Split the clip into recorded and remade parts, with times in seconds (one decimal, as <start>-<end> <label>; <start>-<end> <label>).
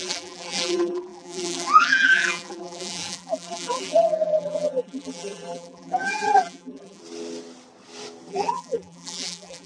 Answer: 0.0-7.0 remade; 7.0-8.3 recorded; 8.3-9.7 remade